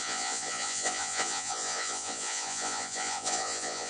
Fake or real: fake